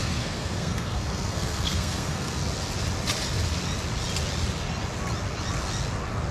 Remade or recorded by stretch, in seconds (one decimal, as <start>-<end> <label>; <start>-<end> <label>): 0.0-2.4 remade; 2.4-6.3 recorded